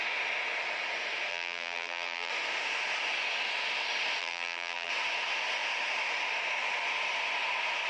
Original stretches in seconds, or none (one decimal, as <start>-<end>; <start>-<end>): 0.0-1.3; 2.3-4.2; 4.9-7.9